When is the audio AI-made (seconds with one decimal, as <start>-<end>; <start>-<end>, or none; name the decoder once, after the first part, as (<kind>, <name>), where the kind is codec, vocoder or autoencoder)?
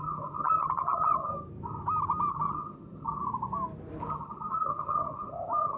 0.0-1.3 (vocoder, HiFi-GAN); 2.3-3.2; 4.1-5.8